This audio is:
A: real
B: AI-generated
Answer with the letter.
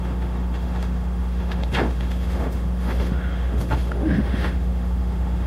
B